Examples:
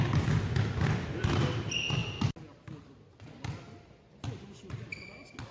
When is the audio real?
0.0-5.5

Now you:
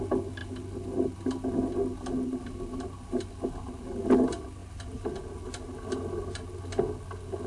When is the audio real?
0.0-7.5

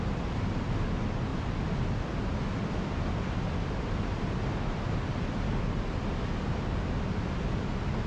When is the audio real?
0.0-8.1

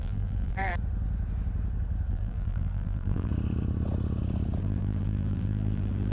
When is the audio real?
0.7-2.1; 3.3-4.6

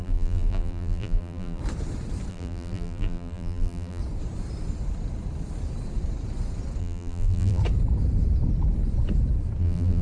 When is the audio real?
1.6-2.3; 4.0-6.8; 7.6-9.6

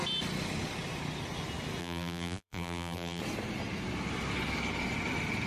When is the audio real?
0.0-1.8; 3.2-5.5

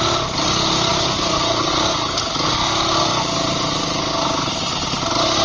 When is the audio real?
0.0-0.9; 1.7-5.4

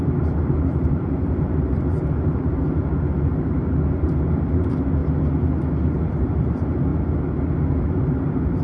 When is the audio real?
2.6-4.0; 5.0-6.1; 6.9-8.0